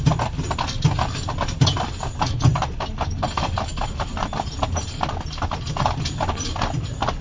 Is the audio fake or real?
real